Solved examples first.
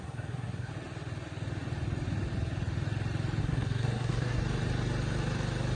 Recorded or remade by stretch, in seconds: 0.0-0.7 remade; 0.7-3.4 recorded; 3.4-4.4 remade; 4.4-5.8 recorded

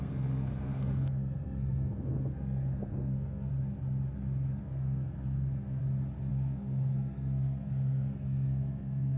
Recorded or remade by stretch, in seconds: 0.0-3.5 remade; 3.5-4.6 recorded; 4.6-5.8 remade; 5.8-6.3 recorded; 6.3-9.2 remade

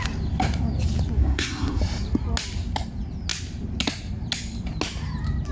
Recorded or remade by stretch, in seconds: 0.0-1.2 recorded; 1.2-1.8 remade; 1.8-5.5 recorded

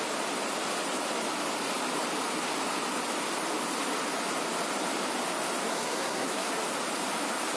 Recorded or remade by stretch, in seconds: 0.0-5.7 recorded; 5.7-6.5 remade; 6.5-7.6 recorded

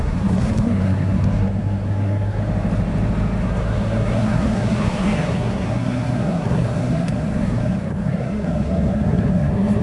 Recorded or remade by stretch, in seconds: 0.0-2.4 remade; 2.4-3.4 recorded; 3.4-9.8 remade